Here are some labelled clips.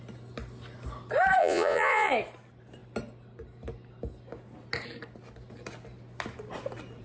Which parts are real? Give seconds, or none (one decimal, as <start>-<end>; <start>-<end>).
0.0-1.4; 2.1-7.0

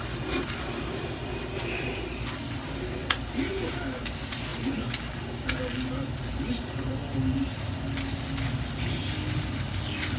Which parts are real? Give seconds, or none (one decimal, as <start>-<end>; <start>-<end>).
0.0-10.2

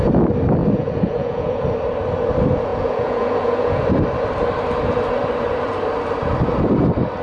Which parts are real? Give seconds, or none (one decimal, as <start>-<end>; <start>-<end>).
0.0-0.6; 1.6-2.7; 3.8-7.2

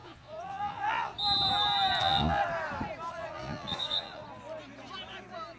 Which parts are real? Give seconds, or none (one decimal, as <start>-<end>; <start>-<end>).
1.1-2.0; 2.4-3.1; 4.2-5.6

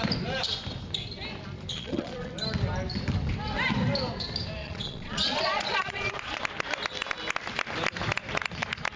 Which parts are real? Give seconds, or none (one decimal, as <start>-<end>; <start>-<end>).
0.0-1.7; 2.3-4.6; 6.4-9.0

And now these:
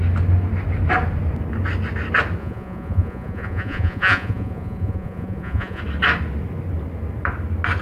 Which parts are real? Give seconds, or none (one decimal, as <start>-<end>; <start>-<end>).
0.0-2.4; 5.8-7.8

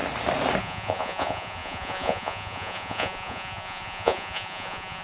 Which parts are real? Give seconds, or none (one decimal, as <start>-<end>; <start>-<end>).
0.0-0.6

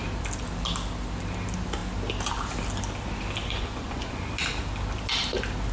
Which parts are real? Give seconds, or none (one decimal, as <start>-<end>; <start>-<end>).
0.0-3.4; 4.2-5.7